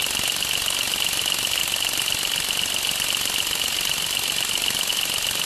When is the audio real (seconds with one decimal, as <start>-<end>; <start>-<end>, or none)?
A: 0.0-5.5